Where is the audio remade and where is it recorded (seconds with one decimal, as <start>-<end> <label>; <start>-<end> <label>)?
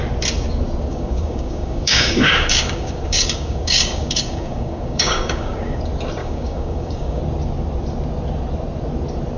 0.0-0.9 recorded; 0.9-5.8 remade; 5.8-6.2 recorded; 6.2-7.2 remade; 7.2-9.4 recorded